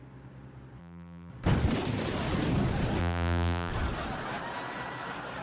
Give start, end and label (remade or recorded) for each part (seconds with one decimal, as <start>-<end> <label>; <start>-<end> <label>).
0.0-0.8 recorded; 0.8-1.3 remade; 1.3-3.0 recorded; 3.0-3.7 remade; 3.7-5.4 recorded